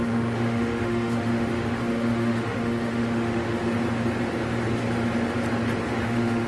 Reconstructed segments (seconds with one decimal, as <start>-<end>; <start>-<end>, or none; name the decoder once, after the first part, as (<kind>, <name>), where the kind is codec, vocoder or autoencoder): 0.0-3.6 (autoencoder, DAC-VAE); 5.9-6.5